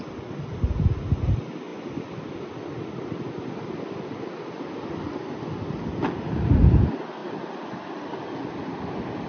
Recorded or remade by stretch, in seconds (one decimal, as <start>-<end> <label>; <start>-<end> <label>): 0.0-1.7 recorded; 1.7-4.2 remade; 4.2-7.2 recorded; 7.2-9.3 remade